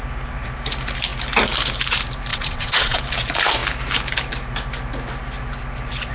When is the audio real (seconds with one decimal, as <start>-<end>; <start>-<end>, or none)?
0.0-2.3; 3.0-6.1